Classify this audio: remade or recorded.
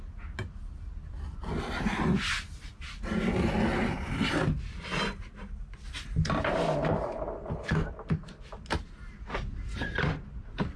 recorded